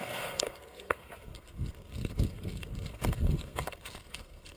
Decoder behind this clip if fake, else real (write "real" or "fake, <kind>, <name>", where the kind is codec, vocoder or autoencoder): fake, codec, SNAC